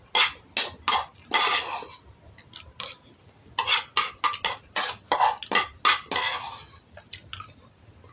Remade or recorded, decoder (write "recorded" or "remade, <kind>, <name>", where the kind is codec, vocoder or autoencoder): recorded